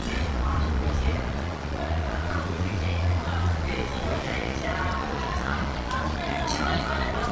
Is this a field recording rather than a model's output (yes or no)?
no